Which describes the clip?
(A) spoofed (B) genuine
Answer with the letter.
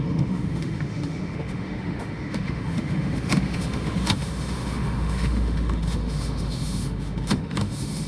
A